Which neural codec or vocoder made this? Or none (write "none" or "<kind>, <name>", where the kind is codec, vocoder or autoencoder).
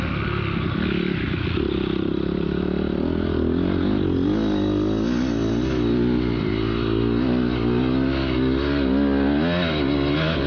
none